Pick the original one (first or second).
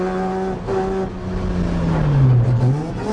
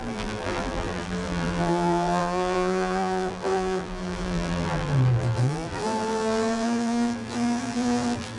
first